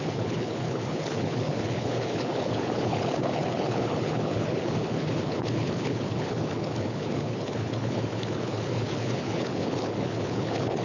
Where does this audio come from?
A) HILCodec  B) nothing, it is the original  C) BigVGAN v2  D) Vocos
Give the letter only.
A